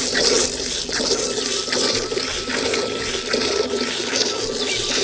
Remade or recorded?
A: recorded